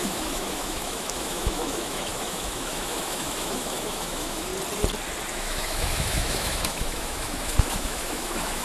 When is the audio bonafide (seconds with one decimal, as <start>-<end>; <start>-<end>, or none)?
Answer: 4.5-5.3

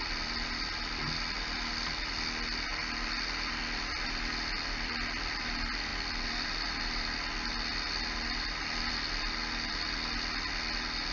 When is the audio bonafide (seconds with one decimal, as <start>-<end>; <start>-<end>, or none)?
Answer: 0.0-11.1

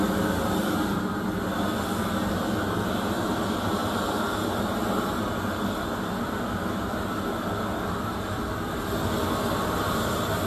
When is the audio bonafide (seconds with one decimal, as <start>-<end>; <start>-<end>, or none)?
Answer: 0.0-10.5

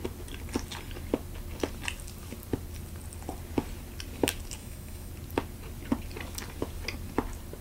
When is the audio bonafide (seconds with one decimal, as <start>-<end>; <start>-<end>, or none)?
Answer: 0.0-4.6; 5.1-7.6

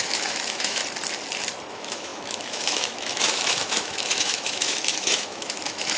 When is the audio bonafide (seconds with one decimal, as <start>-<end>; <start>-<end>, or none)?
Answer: 0.8-1.7

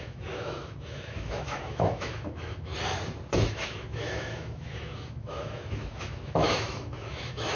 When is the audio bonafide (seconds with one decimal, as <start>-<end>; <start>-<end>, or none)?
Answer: 2.7-3.3

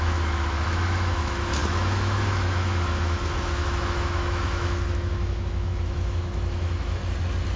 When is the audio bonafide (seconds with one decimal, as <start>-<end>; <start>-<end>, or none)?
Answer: 7.0-7.6

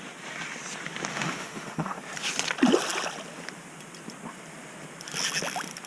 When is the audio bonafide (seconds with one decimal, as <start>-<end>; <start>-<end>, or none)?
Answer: 0.0-1.1; 2.0-5.9